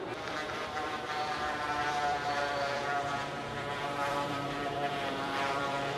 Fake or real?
fake